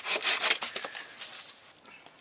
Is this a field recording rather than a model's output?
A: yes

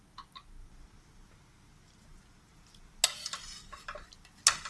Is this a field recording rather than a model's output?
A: yes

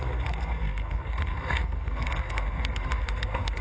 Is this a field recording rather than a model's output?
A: no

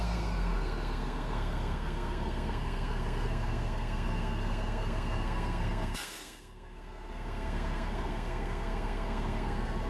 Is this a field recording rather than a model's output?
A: no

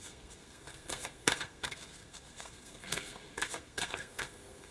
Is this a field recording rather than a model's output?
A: no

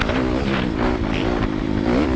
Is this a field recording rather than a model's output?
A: yes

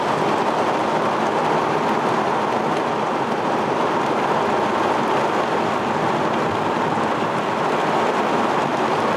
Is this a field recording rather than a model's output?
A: yes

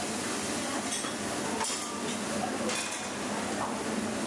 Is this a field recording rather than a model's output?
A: yes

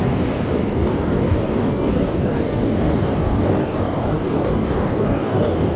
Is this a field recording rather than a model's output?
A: no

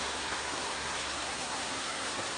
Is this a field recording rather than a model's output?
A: no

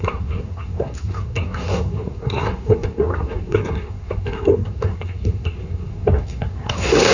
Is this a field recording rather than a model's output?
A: no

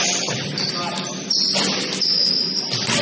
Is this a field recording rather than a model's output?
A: yes